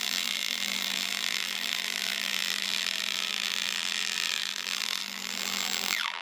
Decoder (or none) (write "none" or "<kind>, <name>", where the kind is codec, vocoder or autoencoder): vocoder, BigVGAN v2